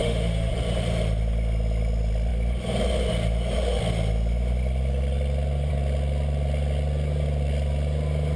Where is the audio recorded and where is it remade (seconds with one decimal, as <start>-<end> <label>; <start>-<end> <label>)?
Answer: 0.0-0.5 remade; 0.5-8.4 recorded